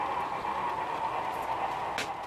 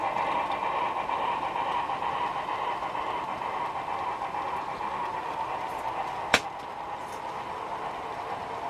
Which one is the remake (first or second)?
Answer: second